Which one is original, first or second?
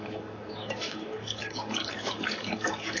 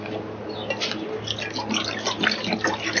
second